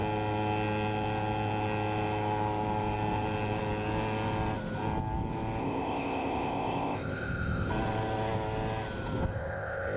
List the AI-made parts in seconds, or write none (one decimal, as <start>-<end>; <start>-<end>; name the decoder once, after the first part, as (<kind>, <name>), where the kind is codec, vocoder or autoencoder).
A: 5.6-7.7 (codec, ZipCodec); 9.3-10.0